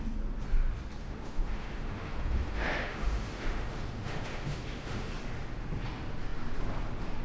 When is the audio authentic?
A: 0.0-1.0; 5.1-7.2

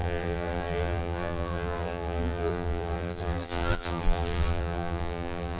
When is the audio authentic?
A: none

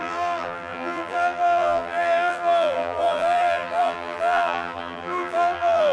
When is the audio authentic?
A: none

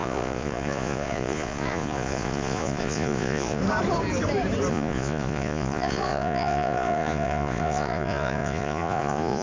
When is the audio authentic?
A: 3.6-4.7

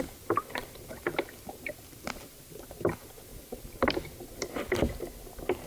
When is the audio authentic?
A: 0.0-5.7

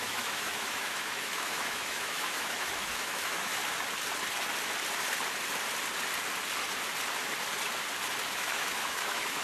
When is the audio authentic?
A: 3.6-8.3

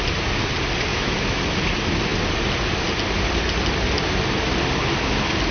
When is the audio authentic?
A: 0.0-0.9; 1.4-5.5